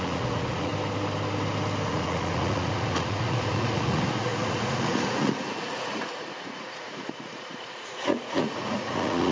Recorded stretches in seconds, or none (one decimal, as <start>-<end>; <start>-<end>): 0.7-1.9